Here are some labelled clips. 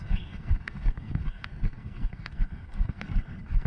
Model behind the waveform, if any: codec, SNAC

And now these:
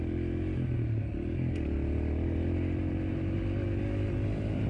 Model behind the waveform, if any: none